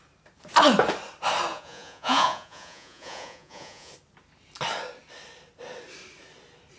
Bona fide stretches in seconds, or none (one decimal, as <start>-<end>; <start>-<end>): 0.0-1.5; 3.9-6.8